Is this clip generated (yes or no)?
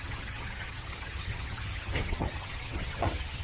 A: yes